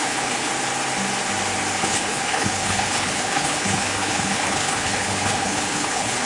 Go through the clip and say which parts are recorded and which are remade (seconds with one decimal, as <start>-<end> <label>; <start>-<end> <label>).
0.0-0.5 remade; 0.5-1.8 recorded; 1.8-6.3 remade